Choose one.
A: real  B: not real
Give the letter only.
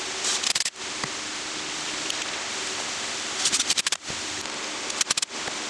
B